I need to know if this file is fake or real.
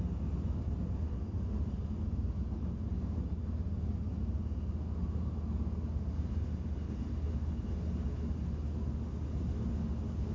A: real